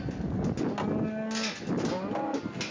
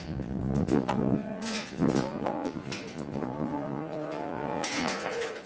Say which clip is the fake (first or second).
second